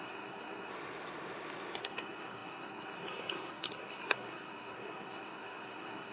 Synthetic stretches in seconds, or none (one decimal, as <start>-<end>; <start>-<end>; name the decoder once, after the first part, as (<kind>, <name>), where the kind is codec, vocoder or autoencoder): 0.0-0.7 (codec, SNAC); 1.8-6.1